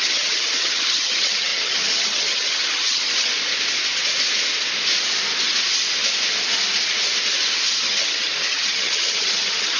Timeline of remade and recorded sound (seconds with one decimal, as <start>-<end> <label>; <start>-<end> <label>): 0.0-3.3 remade; 3.3-7.8 recorded; 7.8-9.8 remade